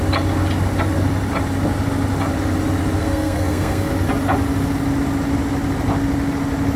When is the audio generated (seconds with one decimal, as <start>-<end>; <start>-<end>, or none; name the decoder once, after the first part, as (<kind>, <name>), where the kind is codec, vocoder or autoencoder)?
3.0-3.9 (codec, SNAC)